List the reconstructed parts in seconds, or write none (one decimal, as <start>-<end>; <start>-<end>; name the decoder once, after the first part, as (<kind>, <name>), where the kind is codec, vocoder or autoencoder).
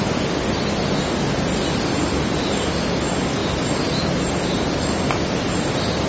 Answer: none